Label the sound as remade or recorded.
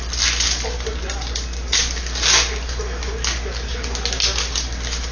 recorded